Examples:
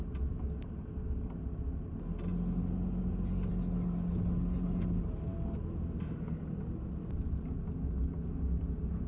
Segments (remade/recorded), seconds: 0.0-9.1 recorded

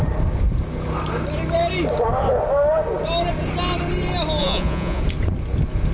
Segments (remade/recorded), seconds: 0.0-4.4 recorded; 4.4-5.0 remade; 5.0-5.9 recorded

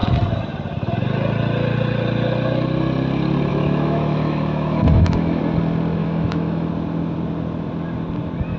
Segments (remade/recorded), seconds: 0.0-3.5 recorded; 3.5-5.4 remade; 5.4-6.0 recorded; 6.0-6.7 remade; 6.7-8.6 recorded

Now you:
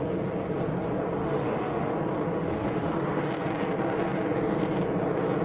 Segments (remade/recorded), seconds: 0.0-1.2 recorded; 1.2-1.9 remade; 1.9-2.4 recorded; 2.4-3.3 remade; 3.3-5.4 recorded

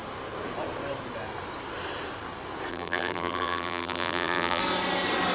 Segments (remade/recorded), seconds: 0.0-2.7 recorded; 2.7-4.6 remade; 4.6-5.3 recorded

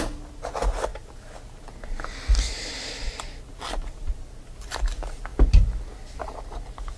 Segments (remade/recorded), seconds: 0.0-7.0 recorded